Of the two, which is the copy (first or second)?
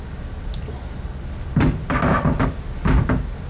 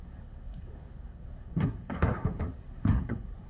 second